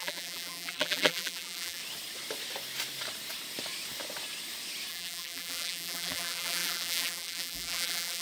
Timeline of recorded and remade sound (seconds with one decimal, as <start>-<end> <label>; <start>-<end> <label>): 0.0-1.8 remade; 1.8-4.9 recorded; 4.9-8.2 remade